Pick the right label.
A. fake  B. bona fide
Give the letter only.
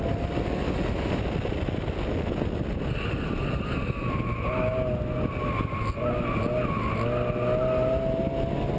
B